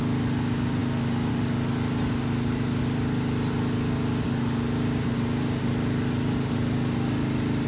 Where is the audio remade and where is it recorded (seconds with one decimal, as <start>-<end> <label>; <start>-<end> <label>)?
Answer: 0.0-7.7 recorded